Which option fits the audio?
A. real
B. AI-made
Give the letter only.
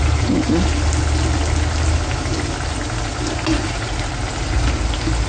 A